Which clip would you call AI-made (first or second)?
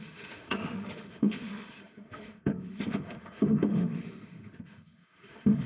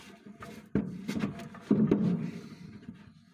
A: first